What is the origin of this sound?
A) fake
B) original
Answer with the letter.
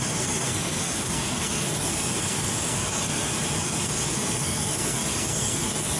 A